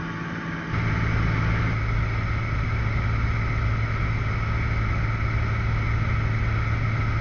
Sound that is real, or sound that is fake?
real